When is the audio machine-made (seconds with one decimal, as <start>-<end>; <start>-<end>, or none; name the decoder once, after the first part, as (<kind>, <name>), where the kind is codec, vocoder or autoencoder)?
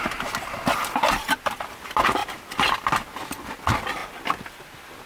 4.0-5.1 (vocoder, BigVGAN v2)